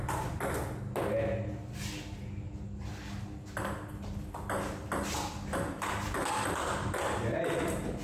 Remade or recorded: recorded